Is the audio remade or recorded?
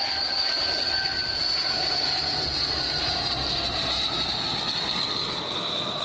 remade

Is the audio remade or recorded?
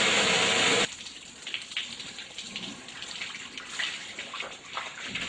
recorded